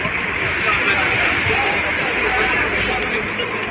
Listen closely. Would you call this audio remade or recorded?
recorded